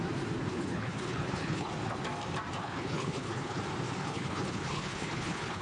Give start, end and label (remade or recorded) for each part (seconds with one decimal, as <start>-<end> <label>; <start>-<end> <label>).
0.0-0.5 recorded; 0.5-1.7 remade; 1.7-2.6 recorded; 2.6-3.6 remade; 3.6-4.0 recorded; 4.0-5.6 remade